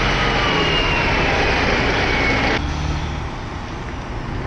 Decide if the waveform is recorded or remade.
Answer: recorded